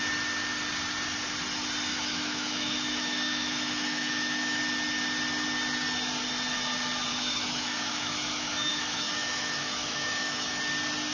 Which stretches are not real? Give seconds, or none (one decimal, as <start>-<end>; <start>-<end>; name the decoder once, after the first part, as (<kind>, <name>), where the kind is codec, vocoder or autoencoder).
1.9-4.6 (autoencoder, DAC-VAE); 7.1-10.6